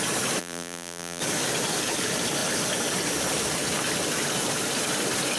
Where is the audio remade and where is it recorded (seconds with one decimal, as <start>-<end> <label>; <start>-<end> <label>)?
0.0-0.4 recorded; 0.4-1.2 remade; 1.2-5.4 recorded